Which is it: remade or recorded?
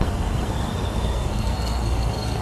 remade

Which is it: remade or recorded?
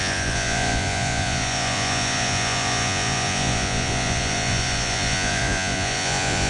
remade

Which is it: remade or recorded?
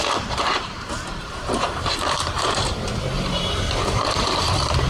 remade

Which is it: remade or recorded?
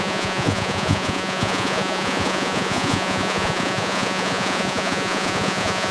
remade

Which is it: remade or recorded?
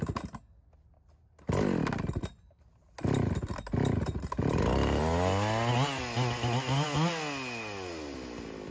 recorded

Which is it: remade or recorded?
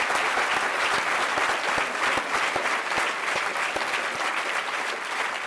recorded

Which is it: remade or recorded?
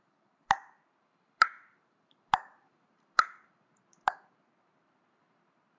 remade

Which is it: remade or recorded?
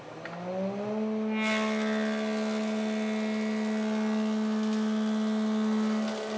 recorded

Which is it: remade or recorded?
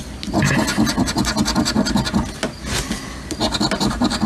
recorded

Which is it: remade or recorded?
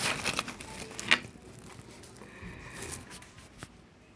recorded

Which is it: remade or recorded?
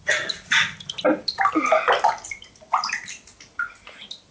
remade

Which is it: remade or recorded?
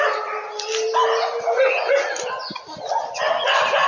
recorded